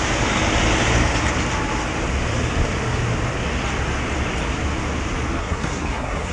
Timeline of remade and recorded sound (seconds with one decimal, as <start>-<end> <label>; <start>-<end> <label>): 0.0-5.4 recorded; 5.4-6.3 remade